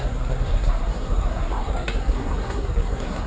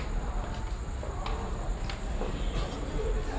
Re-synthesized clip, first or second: first